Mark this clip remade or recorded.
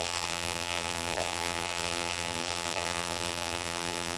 remade